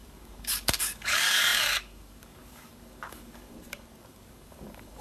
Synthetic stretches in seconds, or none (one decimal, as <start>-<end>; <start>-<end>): 0.0-5.0